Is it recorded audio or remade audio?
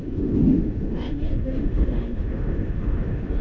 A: remade